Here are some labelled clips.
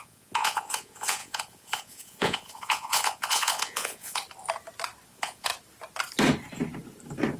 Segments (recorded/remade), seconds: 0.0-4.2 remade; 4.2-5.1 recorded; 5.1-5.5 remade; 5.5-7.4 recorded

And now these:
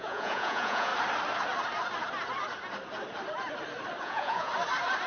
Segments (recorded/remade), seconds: 0.0-0.9 remade; 0.9-4.0 recorded; 4.0-4.5 remade; 4.5-5.1 recorded

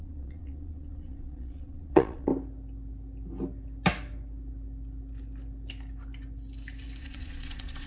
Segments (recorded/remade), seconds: 0.0-2.3 remade; 2.3-7.0 recorded; 7.0-7.9 remade

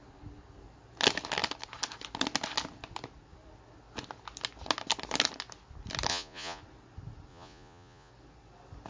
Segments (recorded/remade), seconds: 0.0-6.1 recorded; 6.1-6.6 remade; 6.6-7.3 recorded; 7.3-8.1 remade; 8.1-8.9 recorded

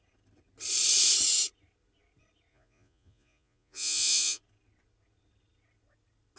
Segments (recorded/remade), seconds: 0.0-2.5 recorded; 2.5-4.4 remade; 4.4-6.4 recorded

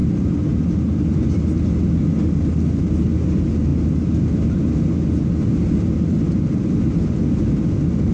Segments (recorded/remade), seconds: 0.0-8.1 recorded

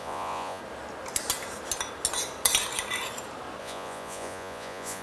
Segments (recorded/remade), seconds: 0.0-0.6 remade; 0.6-3.6 recorded; 3.6-5.0 remade

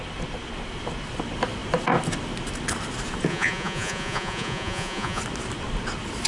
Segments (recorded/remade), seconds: 0.0-3.3 recorded; 3.3-5.2 remade; 5.2-6.3 recorded